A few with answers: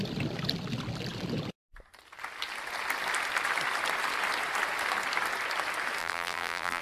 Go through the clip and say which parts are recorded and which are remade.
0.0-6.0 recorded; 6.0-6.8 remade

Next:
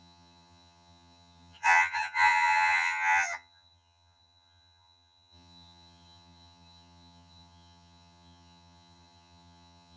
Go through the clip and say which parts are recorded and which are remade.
0.0-10.0 remade

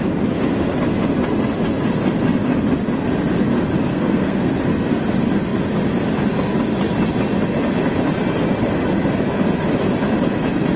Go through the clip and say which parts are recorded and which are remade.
0.0-3.9 recorded; 3.9-4.5 remade; 4.5-10.8 recorded

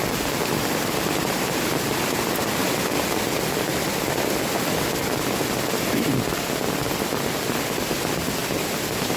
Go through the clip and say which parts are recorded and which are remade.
0.0-1.9 remade; 1.9-2.6 recorded; 2.6-3.1 remade; 3.1-8.4 recorded; 8.4-9.2 remade

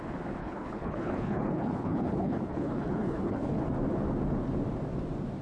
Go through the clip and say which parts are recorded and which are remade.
0.0-0.4 recorded; 0.4-3.6 remade; 3.6-5.4 recorded